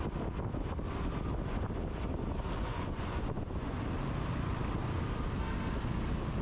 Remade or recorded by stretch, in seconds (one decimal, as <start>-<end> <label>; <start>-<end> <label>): 0.0-2.7 recorded; 2.7-3.8 remade; 3.8-6.4 recorded